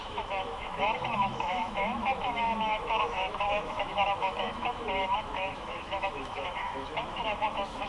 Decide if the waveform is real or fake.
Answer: fake